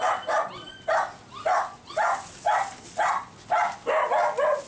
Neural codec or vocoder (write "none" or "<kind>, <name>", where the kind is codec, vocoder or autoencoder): none